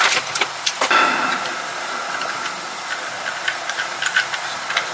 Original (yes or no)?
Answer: yes